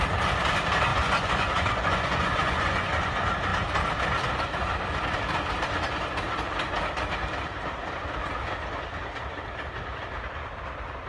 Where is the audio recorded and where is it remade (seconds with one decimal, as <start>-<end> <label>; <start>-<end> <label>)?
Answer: 0.0-0.9 recorded; 0.9-3.1 remade; 3.1-11.1 recorded